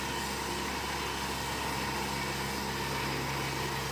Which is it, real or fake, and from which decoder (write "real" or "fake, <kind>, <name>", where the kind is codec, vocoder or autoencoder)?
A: real